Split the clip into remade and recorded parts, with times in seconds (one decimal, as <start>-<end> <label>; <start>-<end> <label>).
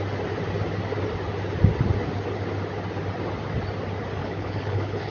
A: 0.0-4.2 recorded; 4.2-5.1 remade